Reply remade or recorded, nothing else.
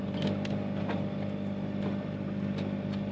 recorded